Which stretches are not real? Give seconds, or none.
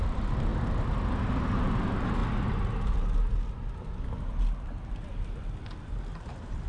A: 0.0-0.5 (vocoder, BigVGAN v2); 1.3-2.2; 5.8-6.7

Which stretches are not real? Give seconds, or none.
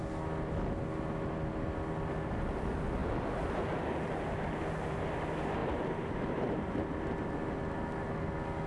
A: 5.6-6.8 (vocoder, BigVGAN v2)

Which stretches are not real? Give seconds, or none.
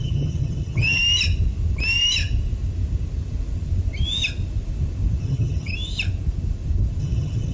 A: 0.0-1.0 (vocoder, HiFi-GAN); 5.2-5.7; 7.0-7.5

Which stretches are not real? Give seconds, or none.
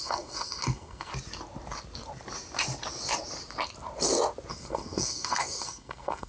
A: 0.0-1.1 (codec, SNAC); 4.5-6.3